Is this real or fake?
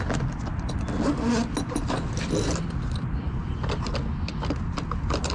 real